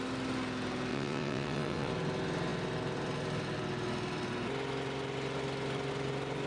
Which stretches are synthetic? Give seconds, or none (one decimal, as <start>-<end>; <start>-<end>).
0.9-1.9